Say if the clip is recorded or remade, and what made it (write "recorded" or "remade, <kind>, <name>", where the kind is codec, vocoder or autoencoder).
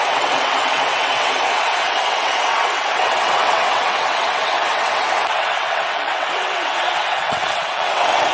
remade, vocoder, WaveNeXt